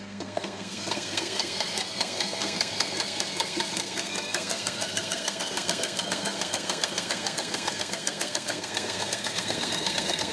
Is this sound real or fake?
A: fake